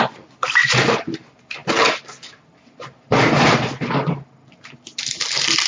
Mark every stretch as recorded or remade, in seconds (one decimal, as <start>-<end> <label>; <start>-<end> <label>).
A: 0.0-5.7 recorded